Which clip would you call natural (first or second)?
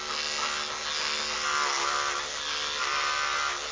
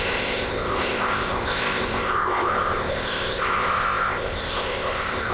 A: first